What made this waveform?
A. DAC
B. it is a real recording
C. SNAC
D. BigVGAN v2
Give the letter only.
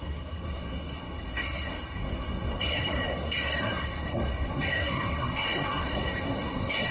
C